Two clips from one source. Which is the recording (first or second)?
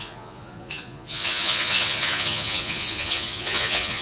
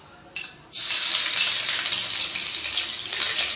second